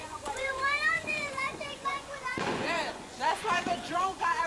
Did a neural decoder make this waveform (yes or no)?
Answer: yes